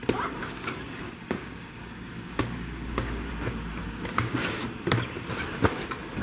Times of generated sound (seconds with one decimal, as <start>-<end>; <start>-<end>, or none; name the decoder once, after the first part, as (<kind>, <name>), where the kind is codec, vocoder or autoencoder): 0.4-3.3 (codec, DAC); 3.8-4.6